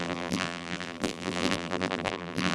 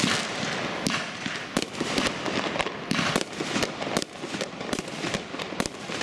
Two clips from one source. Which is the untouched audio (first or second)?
second